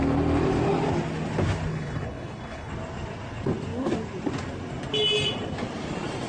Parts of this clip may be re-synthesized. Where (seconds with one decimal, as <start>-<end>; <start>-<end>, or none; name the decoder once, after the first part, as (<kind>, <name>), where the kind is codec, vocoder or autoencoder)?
1.7-2.7 (codec, HILCodec)